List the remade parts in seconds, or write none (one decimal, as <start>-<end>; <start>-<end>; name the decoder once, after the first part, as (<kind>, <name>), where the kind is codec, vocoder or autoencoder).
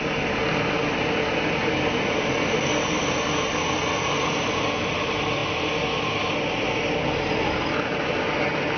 none